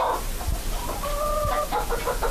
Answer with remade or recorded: recorded